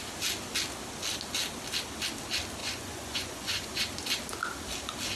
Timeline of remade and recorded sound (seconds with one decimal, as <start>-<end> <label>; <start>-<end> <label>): 0.0-2.6 recorded; 2.6-3.8 remade; 3.8-5.2 recorded